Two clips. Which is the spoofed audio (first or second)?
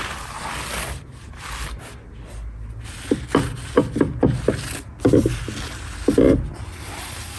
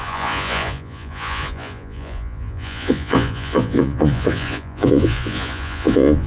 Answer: second